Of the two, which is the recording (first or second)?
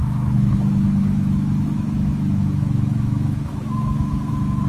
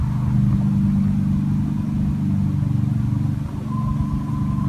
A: second